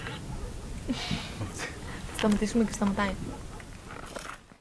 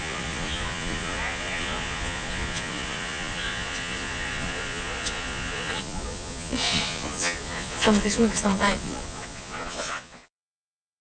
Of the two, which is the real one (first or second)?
first